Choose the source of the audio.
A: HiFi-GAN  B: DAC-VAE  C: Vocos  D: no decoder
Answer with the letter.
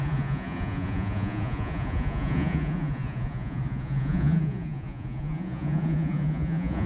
C